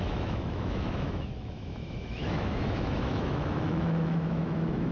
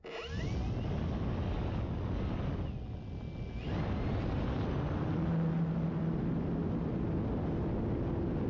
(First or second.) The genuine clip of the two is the second